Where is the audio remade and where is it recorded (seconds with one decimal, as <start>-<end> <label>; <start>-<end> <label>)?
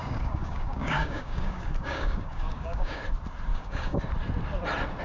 0.0-3.0 remade; 3.0-3.5 recorded; 3.5-4.0 remade; 4.0-5.0 recorded